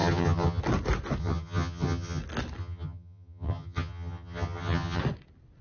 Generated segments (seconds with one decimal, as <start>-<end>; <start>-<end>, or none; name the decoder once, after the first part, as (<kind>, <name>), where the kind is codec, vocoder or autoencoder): 0.0-0.6 (vocoder, HiFi-GAN); 1.2-2.2; 2.6-5.0